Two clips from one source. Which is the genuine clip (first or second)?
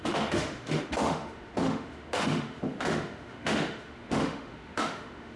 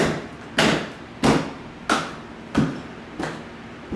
second